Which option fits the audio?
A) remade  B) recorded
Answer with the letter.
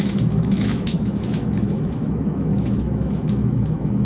A